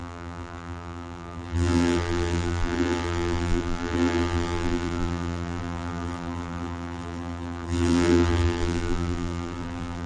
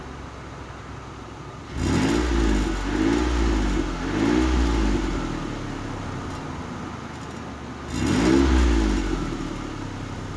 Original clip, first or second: second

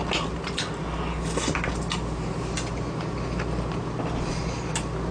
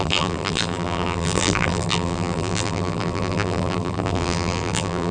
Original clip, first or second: first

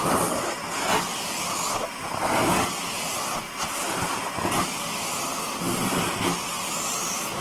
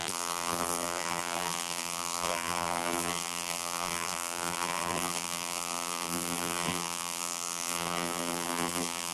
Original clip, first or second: first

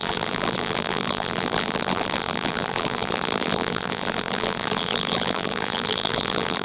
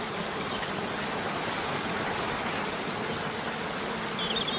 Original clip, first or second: second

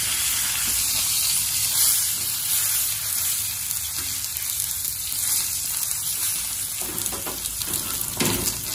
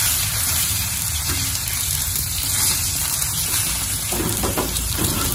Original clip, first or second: first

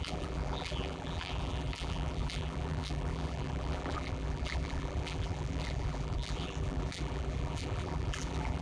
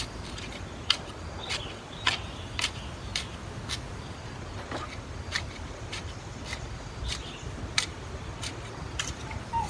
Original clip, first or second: second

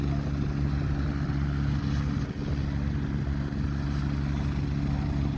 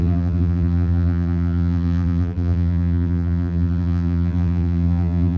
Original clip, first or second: first